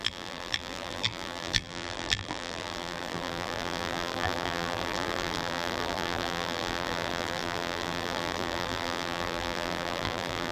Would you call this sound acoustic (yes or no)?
no